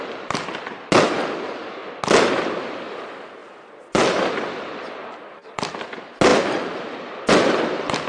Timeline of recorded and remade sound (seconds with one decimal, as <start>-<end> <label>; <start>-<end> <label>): 0.0-3.4 recorded; 3.4-5.7 remade; 5.7-8.1 recorded